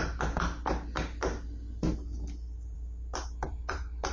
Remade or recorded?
recorded